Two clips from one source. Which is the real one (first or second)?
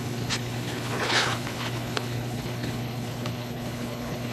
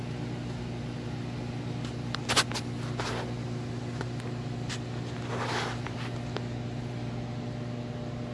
second